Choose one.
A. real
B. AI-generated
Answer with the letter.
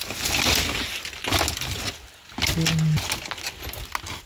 A